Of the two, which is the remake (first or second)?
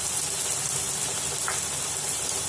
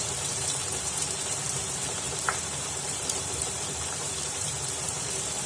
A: second